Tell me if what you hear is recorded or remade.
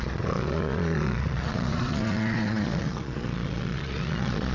remade